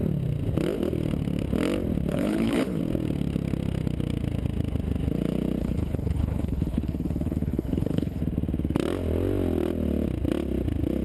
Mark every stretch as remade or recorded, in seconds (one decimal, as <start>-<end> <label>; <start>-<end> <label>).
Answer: 0.0-2.1 recorded; 2.1-2.8 remade; 2.8-5.6 recorded; 5.6-8.2 remade; 8.2-11.0 recorded